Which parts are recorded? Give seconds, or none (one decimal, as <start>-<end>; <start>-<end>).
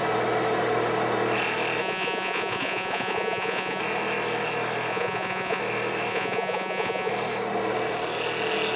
0.0-1.8; 3.8-4.9; 5.6-6.1; 7.1-8.8